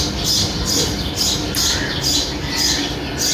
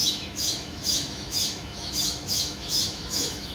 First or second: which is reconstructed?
second